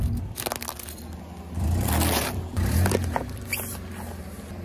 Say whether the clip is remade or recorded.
recorded